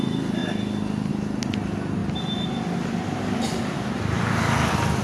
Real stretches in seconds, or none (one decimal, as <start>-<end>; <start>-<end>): 0.0-5.0